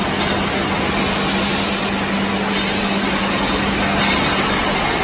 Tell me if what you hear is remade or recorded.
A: recorded